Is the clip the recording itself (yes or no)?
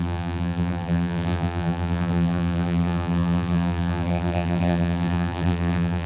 no